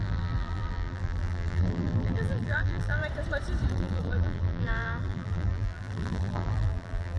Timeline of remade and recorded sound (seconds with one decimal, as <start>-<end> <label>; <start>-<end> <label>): 0.0-3.0 remade; 3.0-3.7 recorded; 3.7-7.2 remade